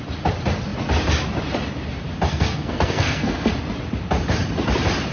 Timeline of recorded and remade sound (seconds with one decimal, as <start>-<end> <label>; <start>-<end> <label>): 0.0-2.3 recorded; 2.3-3.5 remade; 3.5-5.1 recorded

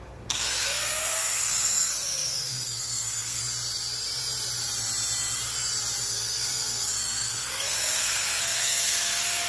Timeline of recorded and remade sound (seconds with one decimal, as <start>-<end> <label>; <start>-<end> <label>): 0.0-3.4 remade; 3.4-6.0 recorded; 6.0-9.5 remade

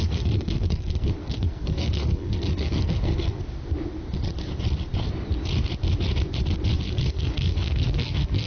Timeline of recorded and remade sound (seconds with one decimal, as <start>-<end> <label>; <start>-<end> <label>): 0.0-3.4 remade; 3.4-7.0 recorded; 7.0-8.5 remade

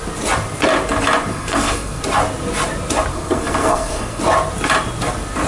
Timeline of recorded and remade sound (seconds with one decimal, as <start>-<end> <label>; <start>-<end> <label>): 0.0-1.3 recorded; 1.3-2.0 remade; 2.0-3.1 recorded; 3.1-4.2 remade; 4.2-5.5 recorded

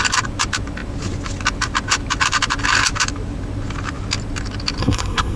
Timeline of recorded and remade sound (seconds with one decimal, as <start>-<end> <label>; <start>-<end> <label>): 0.0-4.8 recorded; 4.8-5.4 remade

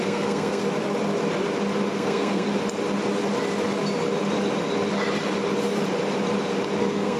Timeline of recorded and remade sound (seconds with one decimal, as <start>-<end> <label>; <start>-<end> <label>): 0.0-0.6 remade; 0.6-1.9 recorded; 1.9-2.5 remade; 2.5-6.8 recorded; 6.8-7.2 remade